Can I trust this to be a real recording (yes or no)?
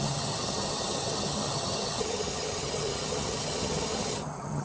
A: no